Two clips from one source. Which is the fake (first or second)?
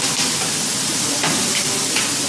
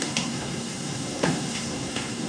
second